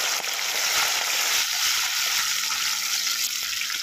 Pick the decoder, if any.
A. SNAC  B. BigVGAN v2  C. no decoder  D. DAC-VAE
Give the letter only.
C